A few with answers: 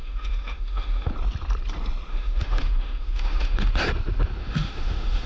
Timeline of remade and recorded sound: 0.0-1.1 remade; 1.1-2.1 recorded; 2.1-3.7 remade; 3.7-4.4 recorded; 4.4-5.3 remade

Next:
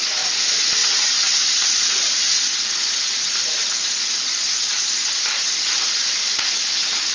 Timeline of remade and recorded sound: 0.0-7.1 remade

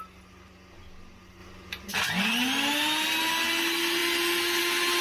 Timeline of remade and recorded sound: 0.0-5.0 recorded

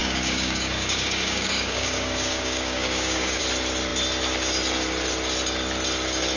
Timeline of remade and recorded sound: 0.0-3.4 remade; 3.4-6.4 recorded